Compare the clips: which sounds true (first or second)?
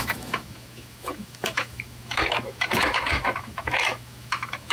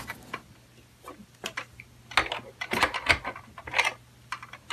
second